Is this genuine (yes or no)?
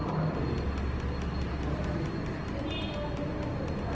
yes